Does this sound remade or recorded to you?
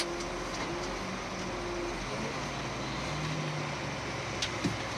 recorded